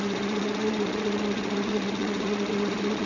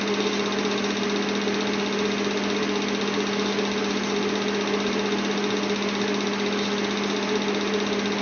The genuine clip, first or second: second